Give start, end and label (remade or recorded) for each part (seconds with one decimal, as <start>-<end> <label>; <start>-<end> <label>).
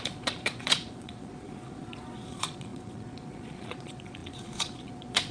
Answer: 0.0-5.3 remade